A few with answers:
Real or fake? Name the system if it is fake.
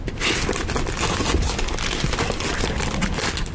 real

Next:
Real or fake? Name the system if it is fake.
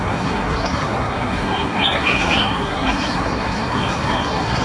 fake, codec, SNAC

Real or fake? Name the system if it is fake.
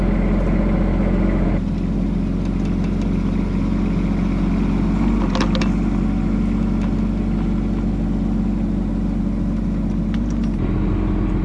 real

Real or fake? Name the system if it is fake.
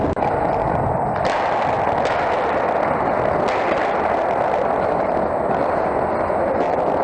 real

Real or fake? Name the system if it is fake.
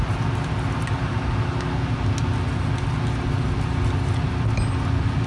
real